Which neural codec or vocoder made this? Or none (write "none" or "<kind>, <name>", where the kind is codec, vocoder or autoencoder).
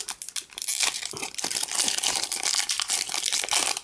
none